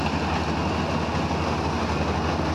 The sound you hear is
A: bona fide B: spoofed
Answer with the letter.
A